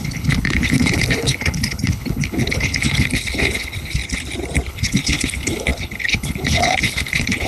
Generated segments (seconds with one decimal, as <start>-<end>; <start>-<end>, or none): 0.0-4.0; 4.7-7.5